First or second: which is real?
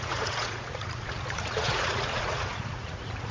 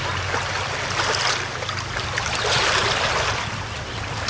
second